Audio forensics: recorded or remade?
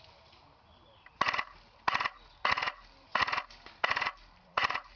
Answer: recorded